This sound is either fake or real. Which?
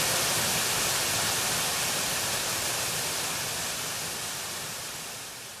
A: real